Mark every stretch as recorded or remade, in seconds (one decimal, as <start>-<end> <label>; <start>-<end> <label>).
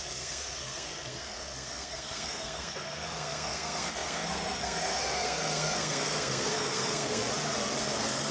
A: 0.0-7.2 remade; 7.2-7.8 recorded; 7.8-8.3 remade